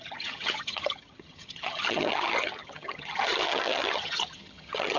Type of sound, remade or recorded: remade